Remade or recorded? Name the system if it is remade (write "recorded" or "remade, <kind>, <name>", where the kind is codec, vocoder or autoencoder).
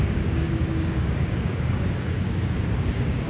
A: remade, codec, DAC